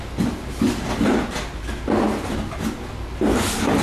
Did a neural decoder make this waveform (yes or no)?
no